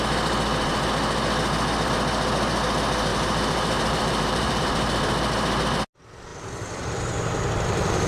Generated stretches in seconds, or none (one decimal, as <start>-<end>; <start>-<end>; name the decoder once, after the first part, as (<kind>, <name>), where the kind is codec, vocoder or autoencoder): 3.1-4.6 (vocoder, BigVGAN v2); 6.3-8.1